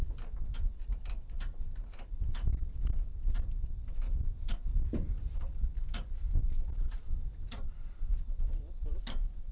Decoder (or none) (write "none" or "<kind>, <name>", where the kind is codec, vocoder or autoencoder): none